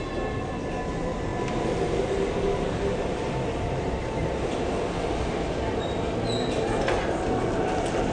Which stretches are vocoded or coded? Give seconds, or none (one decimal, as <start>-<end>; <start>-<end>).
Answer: none